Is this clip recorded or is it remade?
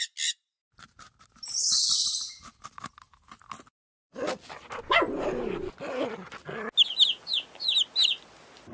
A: recorded